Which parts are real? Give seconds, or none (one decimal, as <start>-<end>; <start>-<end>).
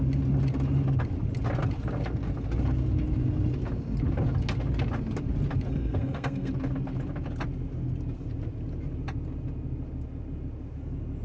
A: 0.0-5.7; 6.5-11.2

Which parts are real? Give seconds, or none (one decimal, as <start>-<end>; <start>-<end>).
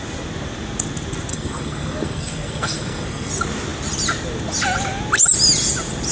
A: 0.0-1.3; 3.3-6.1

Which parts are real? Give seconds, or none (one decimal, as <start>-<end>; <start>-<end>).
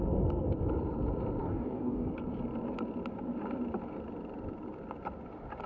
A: 0.0-1.4; 2.1-5.7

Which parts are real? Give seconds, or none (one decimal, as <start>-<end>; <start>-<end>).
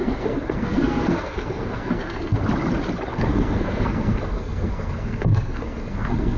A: 2.4-3.1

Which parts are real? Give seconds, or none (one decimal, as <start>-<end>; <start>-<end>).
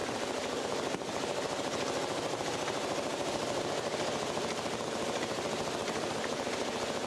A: 0.0-7.1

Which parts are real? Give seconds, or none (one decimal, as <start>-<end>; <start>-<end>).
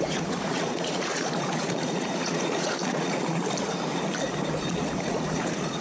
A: 3.4-4.7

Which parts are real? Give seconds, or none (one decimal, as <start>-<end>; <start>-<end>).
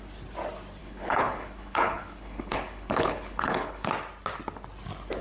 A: 0.0-0.8; 3.9-5.2